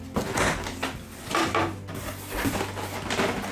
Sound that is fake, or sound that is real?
real